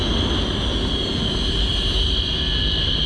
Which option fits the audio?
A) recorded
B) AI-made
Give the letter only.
A